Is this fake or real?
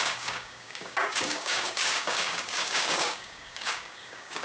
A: fake